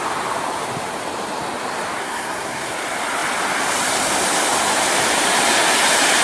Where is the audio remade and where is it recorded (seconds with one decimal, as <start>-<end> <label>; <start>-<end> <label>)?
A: 0.0-2.0 recorded; 2.0-2.7 remade; 2.7-6.2 recorded

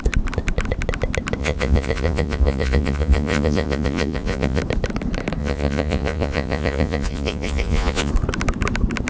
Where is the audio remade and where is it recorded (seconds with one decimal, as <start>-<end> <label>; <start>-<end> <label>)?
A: 0.0-1.4 recorded; 1.4-4.6 remade; 4.6-5.4 recorded; 5.4-8.1 remade; 8.1-9.1 recorded

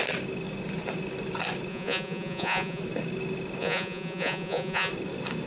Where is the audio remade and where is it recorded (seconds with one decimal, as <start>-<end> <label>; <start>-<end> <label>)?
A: 0.0-1.7 recorded; 1.7-2.8 remade; 2.8-3.6 recorded; 3.6-4.9 remade; 4.9-5.5 recorded

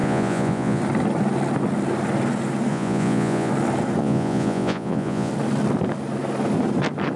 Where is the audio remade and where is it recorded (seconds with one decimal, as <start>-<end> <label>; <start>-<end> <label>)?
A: 0.0-0.8 remade; 0.8-2.7 recorded; 2.7-3.5 remade; 3.5-4.0 recorded; 4.0-5.3 remade; 5.3-7.2 recorded

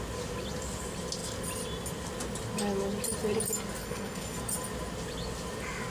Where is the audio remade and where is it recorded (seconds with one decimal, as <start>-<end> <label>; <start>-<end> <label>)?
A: 0.0-3.8 recorded; 3.8-4.4 remade; 4.4-5.9 recorded

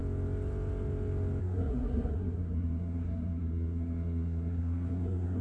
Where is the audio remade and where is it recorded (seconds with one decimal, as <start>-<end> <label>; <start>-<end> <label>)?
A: 0.0-1.4 recorded; 1.4-5.4 remade